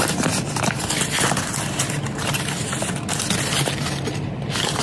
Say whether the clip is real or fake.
real